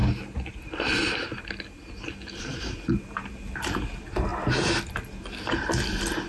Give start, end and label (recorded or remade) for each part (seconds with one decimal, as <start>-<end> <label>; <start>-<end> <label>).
0.0-2.4 recorded; 2.4-4.3 remade; 4.3-4.8 recorded; 4.8-6.3 remade